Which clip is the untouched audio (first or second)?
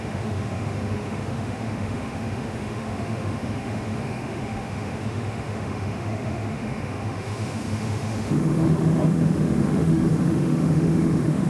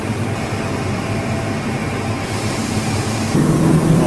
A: second